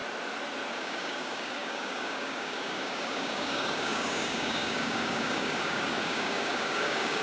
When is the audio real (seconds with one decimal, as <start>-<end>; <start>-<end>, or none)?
0.0-0.7

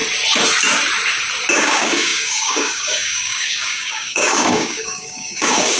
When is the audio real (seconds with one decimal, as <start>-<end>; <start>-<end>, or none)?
0.0-1.5